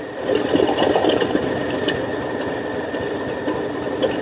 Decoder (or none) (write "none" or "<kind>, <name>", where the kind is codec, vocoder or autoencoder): none